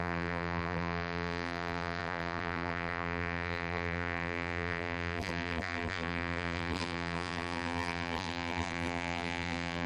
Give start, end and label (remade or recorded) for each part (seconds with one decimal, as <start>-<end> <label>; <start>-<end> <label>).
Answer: 0.0-9.9 remade